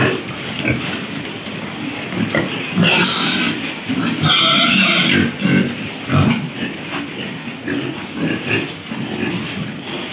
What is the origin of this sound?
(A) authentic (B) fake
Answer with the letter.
A